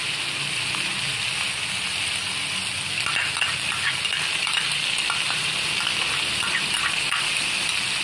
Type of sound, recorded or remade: recorded